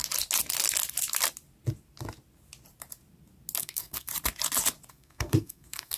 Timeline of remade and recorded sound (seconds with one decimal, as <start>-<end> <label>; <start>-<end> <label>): 0.0-3.6 recorded; 3.6-4.1 remade; 4.1-4.9 recorded; 4.9-6.0 remade